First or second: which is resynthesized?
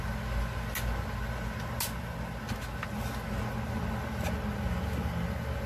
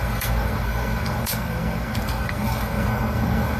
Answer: second